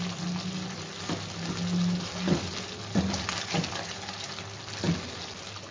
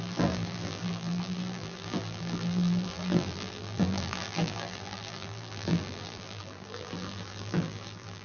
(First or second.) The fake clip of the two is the second